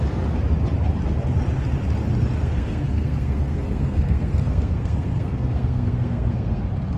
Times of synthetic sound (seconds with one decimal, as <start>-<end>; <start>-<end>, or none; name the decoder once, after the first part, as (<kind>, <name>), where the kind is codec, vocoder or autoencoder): 2.4-6.6 (codec, SNAC)